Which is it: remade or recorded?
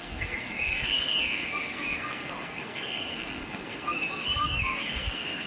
remade